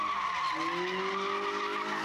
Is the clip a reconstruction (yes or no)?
no